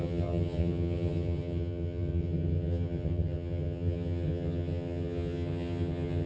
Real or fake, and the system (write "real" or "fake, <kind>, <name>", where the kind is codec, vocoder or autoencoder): fake, vocoder, HiFi-GAN